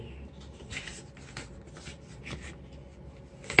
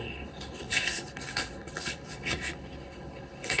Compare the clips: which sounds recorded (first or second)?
first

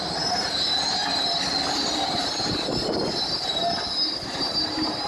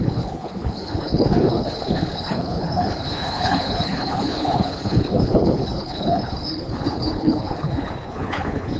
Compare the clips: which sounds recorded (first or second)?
first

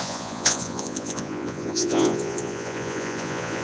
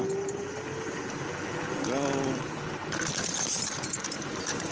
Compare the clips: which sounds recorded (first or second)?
second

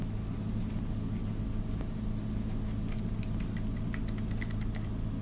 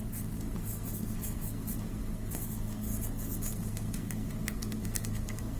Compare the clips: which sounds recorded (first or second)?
first